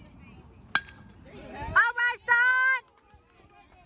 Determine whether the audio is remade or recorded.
recorded